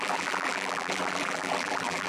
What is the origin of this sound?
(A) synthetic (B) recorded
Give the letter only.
A